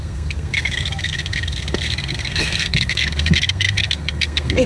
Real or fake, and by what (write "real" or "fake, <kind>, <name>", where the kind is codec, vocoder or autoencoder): fake, codec, SNAC